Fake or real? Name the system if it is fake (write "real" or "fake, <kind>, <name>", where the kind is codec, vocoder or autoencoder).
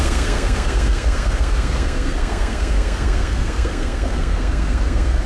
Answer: fake, codec, SNAC